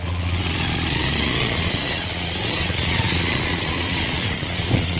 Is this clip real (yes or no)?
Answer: no